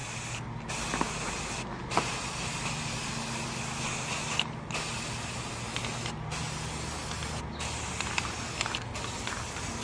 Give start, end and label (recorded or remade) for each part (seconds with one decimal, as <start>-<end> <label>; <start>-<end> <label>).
0.0-9.8 recorded